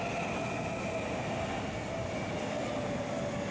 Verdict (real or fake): real